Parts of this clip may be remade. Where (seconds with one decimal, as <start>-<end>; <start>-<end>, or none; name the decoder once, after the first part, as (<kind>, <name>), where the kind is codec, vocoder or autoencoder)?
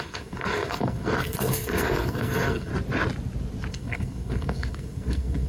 0.0-2.7 (codec, SNAC); 3.7-5.5